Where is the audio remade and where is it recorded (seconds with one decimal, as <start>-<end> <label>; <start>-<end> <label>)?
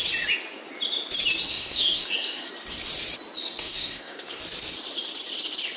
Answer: 0.0-1.5 recorded; 1.5-2.5 remade; 2.5-3.4 recorded; 3.4-4.4 remade; 4.4-5.8 recorded